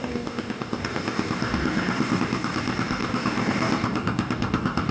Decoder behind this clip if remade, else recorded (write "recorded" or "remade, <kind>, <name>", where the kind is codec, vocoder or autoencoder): remade, codec, DAC